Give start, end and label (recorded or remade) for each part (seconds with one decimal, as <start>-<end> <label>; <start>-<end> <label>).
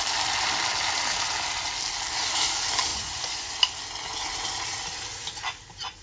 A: 0.0-2.9 recorded; 2.9-3.5 remade; 3.5-6.0 recorded